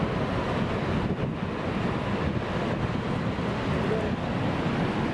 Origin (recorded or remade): recorded